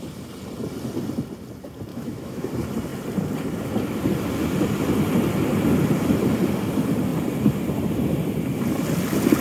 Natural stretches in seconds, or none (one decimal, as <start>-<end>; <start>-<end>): 0.0-1.9; 2.5-9.4